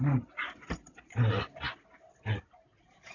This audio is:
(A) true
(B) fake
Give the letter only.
A